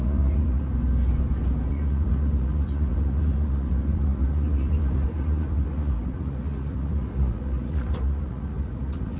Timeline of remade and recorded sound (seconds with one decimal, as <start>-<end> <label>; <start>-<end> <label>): 0.0-0.7 remade; 0.7-1.7 recorded; 1.7-9.2 remade